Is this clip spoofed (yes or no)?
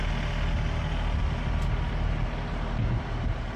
no